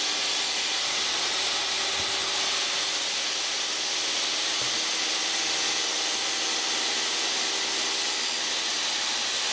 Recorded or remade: recorded